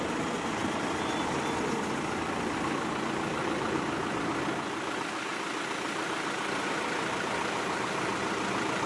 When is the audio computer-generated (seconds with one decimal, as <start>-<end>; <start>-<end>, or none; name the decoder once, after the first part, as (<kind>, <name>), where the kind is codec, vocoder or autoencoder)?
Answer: 0.6-3.8 (vocoder, BigVGAN v2)